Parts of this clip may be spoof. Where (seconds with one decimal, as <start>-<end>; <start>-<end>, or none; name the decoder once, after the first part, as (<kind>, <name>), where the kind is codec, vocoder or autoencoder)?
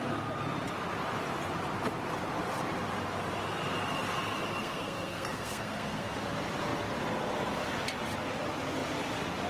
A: 4.6-6.2 (codec, SNAC)